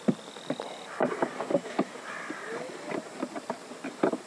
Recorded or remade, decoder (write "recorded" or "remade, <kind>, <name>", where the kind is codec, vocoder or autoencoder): recorded